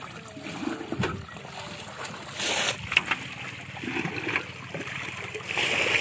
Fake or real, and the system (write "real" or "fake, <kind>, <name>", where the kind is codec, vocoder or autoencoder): real